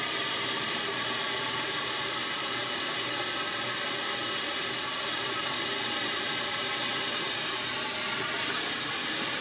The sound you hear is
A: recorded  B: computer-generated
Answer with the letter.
A